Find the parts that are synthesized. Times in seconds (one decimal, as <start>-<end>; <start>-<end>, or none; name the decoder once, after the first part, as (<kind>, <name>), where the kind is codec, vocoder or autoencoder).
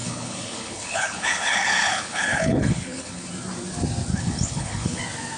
0.0-3.2 (codec, HILCodec); 4.1-5.0